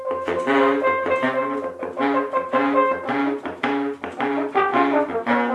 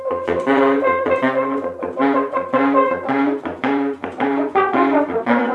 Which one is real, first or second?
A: first